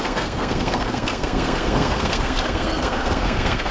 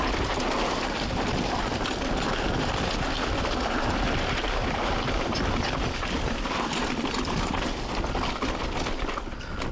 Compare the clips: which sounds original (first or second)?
second